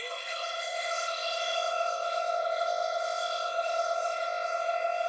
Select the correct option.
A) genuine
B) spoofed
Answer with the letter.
B